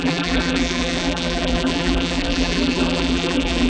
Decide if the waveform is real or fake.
fake